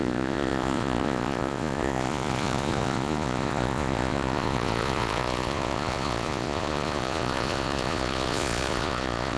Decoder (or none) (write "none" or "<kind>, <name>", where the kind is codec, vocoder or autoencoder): vocoder, Vocos